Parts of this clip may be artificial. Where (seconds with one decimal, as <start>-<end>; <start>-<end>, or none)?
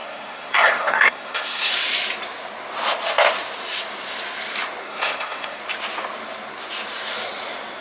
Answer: 0.0-1.7; 4.8-5.6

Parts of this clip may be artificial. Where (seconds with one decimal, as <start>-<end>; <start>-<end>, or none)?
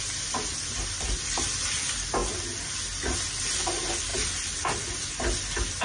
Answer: none